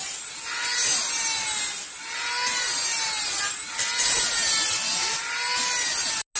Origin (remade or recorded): recorded